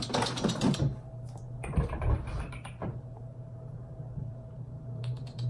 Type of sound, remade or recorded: remade